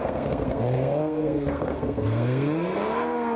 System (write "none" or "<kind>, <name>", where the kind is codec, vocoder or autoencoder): codec, SNAC